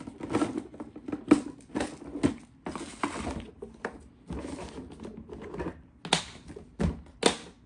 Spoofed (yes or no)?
no